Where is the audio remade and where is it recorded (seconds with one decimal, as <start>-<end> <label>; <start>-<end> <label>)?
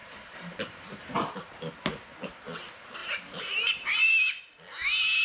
0.0-1.3 remade; 1.3-3.0 recorded; 3.0-4.0 remade; 4.0-5.2 recorded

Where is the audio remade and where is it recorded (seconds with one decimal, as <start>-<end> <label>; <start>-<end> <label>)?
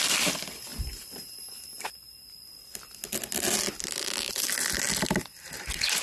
0.0-0.7 recorded; 0.7-1.3 remade; 1.3-6.0 recorded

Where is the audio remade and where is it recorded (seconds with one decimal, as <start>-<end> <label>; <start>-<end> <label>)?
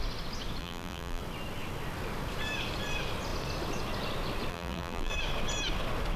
0.0-0.6 recorded; 0.6-1.2 remade; 1.2-4.5 recorded; 4.5-5.1 remade; 5.1-6.2 recorded